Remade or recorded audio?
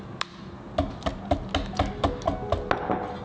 recorded